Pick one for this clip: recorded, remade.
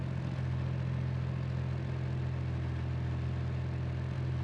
recorded